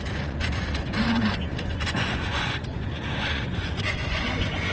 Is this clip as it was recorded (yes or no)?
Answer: no